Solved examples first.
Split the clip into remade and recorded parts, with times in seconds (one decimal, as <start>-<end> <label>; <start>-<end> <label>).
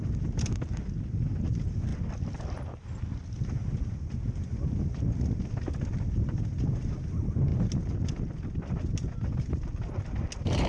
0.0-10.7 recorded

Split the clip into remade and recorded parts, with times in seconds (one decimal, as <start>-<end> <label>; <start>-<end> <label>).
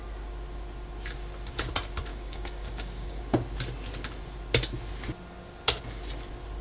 0.0-2.1 recorded; 2.1-3.2 remade; 3.2-6.6 recorded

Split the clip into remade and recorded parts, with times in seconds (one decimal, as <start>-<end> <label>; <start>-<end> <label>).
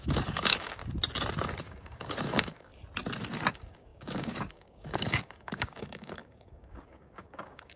0.0-0.8 remade; 0.8-1.6 recorded; 1.6-2.7 remade; 2.7-3.5 recorded; 3.5-7.8 remade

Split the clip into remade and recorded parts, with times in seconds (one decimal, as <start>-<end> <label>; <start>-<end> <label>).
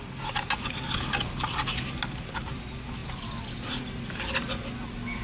0.0-5.2 recorded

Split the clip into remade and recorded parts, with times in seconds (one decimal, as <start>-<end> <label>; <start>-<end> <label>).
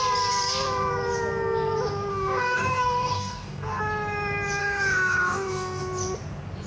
0.0-2.1 recorded; 2.1-3.8 remade; 3.8-4.6 recorded; 4.6-5.8 remade; 5.8-6.7 recorded